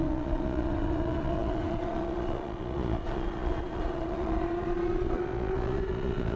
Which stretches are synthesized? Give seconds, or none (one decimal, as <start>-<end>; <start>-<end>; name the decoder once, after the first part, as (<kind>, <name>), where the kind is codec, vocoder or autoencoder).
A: 0.0-6.4 (vocoder, Vocos)